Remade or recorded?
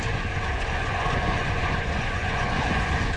remade